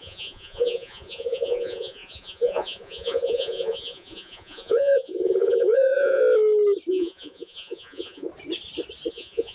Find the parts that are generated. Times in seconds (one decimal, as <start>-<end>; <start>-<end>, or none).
0.0-6.2; 6.9-8.3; 9.1-9.5